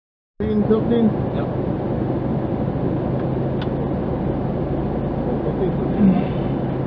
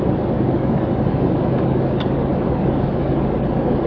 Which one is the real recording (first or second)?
first